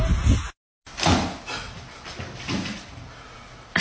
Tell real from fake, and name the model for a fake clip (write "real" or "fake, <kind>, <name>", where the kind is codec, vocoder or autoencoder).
real